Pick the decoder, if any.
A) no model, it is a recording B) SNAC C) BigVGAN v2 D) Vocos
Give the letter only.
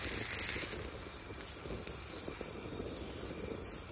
A